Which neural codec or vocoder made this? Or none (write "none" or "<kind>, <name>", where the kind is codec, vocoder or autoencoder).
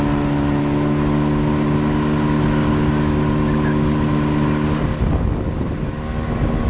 none